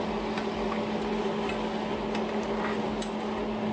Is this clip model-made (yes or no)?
no